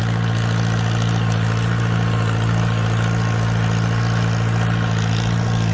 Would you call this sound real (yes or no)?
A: yes